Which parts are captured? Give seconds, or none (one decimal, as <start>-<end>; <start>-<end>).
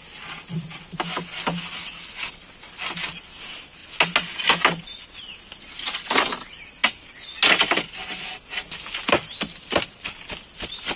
0.0-11.0